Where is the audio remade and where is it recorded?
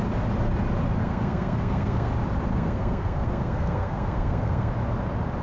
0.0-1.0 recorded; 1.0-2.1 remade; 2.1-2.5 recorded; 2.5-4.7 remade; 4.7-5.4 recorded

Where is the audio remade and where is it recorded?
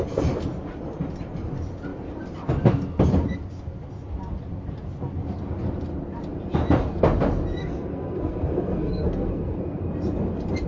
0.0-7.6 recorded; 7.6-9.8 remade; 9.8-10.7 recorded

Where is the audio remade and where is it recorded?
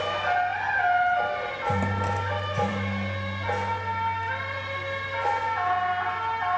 0.0-6.6 recorded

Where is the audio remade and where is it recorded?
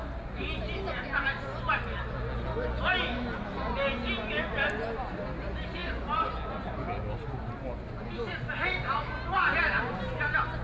0.0-10.6 recorded